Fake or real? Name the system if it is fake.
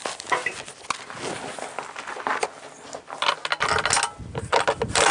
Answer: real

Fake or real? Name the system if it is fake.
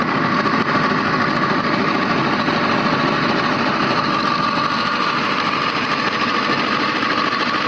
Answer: real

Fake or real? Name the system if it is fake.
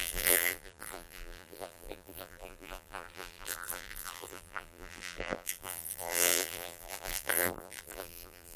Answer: fake, vocoder, BigVGAN v2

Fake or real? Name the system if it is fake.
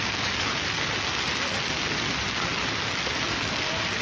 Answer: real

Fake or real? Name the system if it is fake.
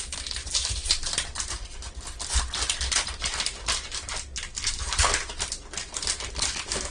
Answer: real